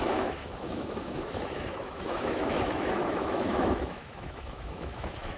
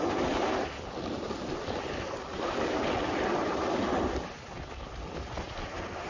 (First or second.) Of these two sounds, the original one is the second